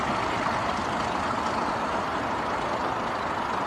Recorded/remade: recorded